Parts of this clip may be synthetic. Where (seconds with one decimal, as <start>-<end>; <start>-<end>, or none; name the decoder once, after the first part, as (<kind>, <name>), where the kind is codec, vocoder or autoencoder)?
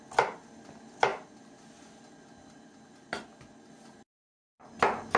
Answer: none